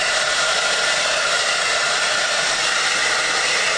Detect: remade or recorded remade